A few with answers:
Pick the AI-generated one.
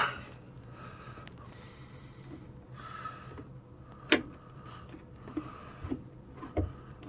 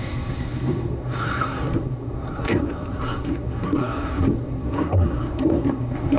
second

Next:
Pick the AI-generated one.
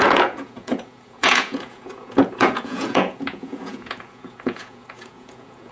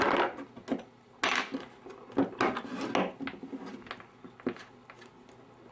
first